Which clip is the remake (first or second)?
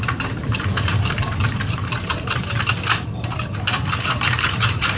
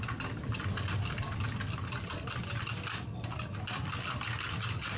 first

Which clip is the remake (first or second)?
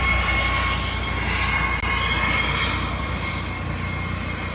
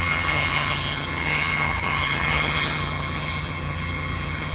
second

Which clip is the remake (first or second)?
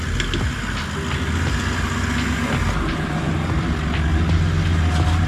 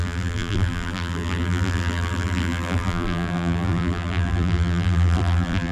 second